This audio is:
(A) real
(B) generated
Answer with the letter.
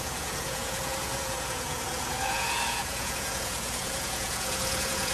B